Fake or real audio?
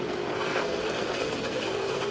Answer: fake